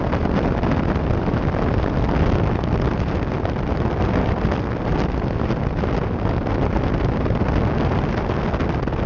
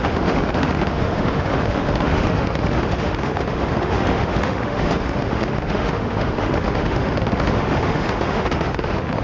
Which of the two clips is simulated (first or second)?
second